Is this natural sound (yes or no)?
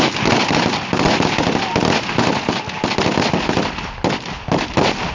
yes